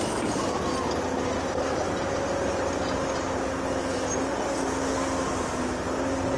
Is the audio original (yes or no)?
yes